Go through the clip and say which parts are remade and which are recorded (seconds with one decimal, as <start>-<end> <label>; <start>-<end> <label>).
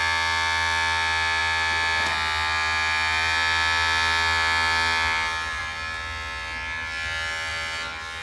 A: 0.0-8.2 recorded